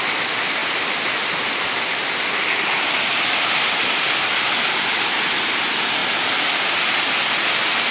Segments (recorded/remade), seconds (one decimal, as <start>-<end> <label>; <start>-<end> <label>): 0.0-7.9 recorded